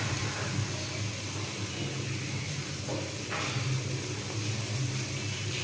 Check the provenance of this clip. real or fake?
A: real